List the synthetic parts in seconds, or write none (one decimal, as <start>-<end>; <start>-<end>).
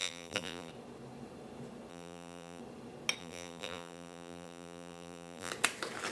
0.0-0.7; 1.9-2.6; 3.2-5.5